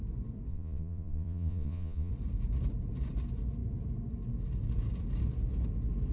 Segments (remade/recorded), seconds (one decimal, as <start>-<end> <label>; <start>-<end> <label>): 0.0-0.5 recorded; 0.5-2.1 remade; 2.1-6.1 recorded